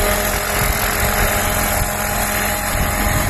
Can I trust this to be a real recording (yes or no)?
yes